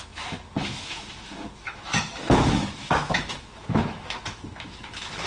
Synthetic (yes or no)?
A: yes